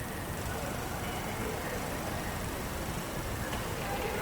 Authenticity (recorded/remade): remade